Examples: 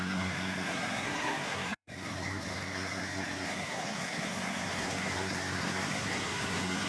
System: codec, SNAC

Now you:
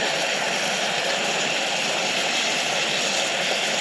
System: none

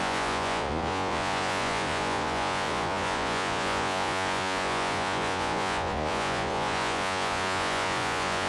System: vocoder, Vocos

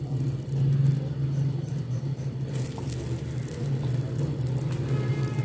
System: none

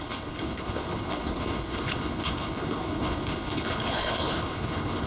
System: codec, HILCodec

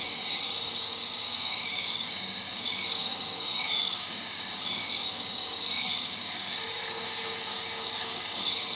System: codec, DAC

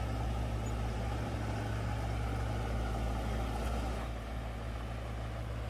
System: none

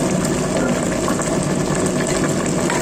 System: none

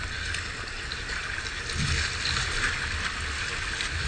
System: none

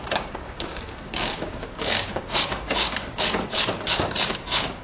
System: codec, DAC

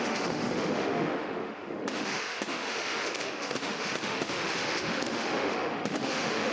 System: autoencoder, DAC-VAE